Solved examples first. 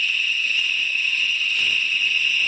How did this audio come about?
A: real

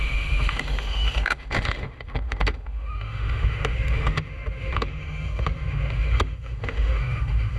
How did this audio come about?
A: fake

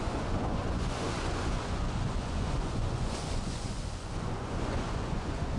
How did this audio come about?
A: fake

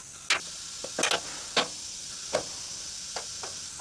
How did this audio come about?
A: real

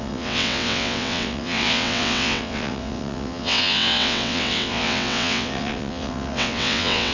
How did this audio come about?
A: fake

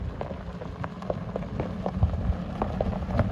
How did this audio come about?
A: real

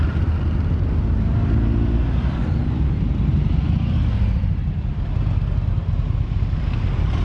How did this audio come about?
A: real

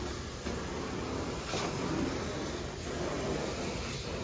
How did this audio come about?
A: real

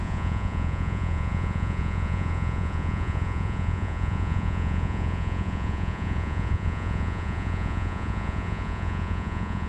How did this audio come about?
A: fake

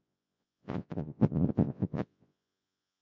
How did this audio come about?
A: fake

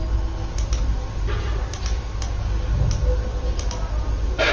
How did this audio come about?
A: real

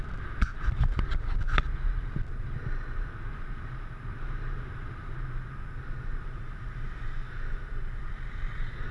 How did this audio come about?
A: real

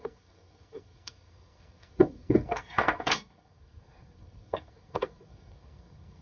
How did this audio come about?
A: fake